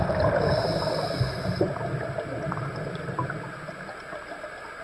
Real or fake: real